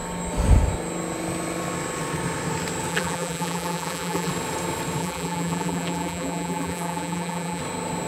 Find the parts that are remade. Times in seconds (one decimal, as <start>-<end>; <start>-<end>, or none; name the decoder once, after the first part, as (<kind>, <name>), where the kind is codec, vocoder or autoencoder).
2.9-4.3 (vocoder, BigVGAN v2); 5.0-7.6